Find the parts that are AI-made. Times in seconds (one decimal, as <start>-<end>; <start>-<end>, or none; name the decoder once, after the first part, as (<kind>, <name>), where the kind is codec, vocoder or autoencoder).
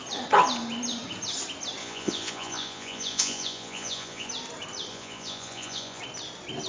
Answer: 1.8-4.3 (vocoder, Vocos); 4.9-6.0